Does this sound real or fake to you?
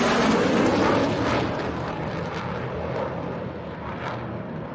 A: real